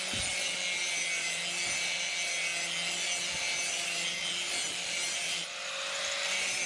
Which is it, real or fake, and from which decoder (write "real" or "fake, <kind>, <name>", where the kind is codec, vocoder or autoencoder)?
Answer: real